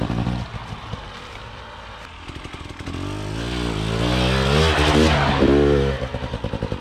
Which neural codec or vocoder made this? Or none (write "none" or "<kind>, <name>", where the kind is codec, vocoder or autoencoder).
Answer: none